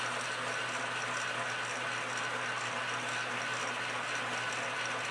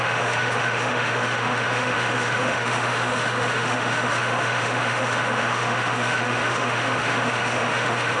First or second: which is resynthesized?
second